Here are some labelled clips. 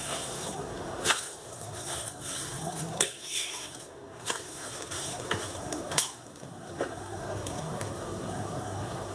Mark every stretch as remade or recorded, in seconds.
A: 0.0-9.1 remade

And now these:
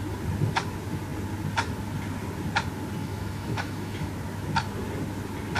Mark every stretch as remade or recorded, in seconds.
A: 0.0-3.0 recorded; 3.0-4.1 remade; 4.1-5.6 recorded

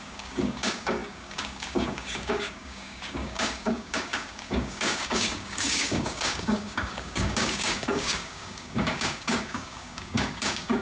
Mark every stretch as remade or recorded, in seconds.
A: 0.0-10.8 remade